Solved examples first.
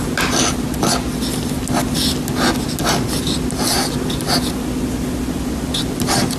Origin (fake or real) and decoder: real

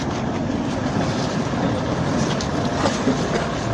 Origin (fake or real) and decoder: real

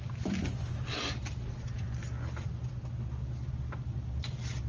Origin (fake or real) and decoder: real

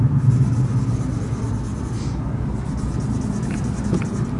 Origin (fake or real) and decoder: real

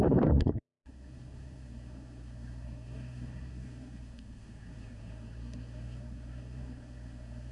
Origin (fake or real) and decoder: fake, codec, SNAC